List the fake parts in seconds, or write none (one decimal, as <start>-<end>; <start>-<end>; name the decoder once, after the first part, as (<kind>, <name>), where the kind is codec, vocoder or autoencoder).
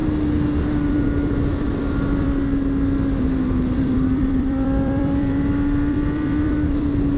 0.9-7.2 (vocoder, BigVGAN v2)